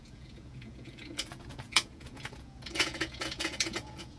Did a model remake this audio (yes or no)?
yes